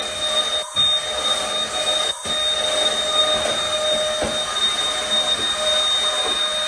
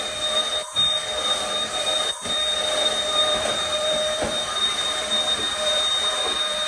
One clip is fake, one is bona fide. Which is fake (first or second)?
second